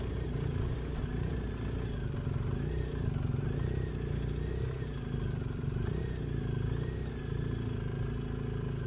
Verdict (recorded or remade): recorded